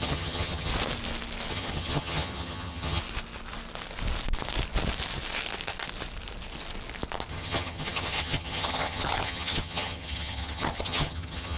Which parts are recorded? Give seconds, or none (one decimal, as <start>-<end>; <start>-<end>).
0.7-1.5; 3.0-7.3